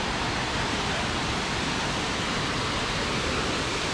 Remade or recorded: recorded